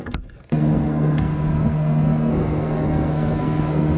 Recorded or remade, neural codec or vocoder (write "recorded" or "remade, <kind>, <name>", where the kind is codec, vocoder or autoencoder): remade, codec, SNAC